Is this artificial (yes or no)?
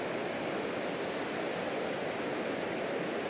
no